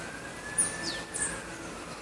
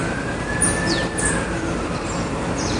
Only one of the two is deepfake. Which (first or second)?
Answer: second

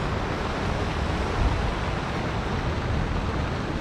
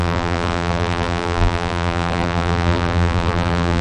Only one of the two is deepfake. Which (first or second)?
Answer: second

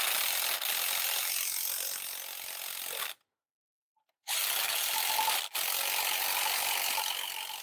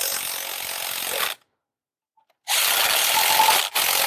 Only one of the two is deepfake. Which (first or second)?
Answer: first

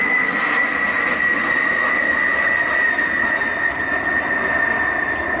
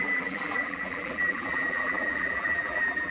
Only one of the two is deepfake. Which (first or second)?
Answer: second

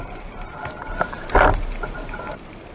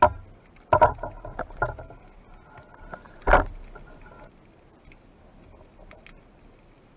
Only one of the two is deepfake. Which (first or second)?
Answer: first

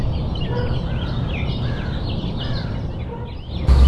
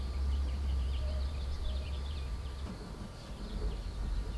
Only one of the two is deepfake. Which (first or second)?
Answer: second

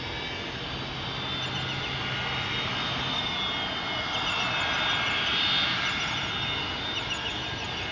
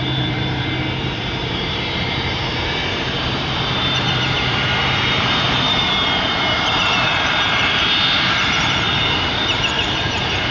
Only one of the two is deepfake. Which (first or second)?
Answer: second